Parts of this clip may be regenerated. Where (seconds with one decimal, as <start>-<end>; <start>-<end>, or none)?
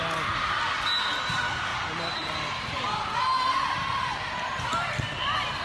1.7-5.1